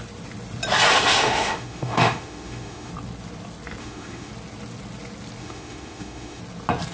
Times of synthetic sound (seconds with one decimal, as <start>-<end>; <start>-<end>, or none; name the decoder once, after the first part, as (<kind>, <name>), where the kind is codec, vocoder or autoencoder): 0.9-2.9 (autoencoder, DAC-VAE); 3.8-4.3; 5.4-6.4